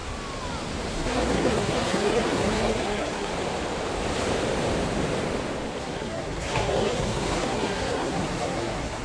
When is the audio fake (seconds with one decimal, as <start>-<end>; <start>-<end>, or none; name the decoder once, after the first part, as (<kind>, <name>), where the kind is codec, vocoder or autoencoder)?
0.9-3.3 (codec, SNAC); 5.8-9.0

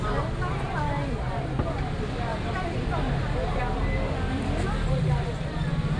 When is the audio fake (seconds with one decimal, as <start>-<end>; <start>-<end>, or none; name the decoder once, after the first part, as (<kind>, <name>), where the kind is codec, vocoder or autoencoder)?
none

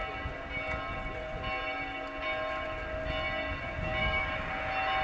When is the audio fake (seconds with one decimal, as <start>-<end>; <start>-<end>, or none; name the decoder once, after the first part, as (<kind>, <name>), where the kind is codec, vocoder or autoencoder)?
4.0-4.5 (codec, DAC)